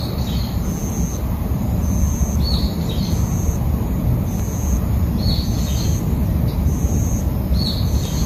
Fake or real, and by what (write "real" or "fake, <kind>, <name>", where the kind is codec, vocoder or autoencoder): real